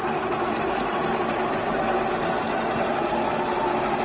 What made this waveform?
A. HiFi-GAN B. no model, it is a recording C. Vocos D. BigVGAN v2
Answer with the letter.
B